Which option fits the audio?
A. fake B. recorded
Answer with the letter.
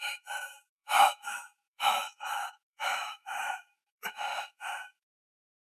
A